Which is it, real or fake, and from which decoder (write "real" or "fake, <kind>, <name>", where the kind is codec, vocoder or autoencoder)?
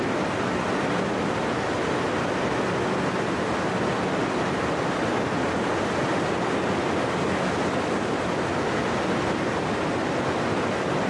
real